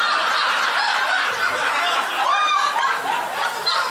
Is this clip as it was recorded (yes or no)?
yes